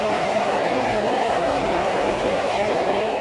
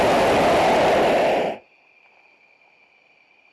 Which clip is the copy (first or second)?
first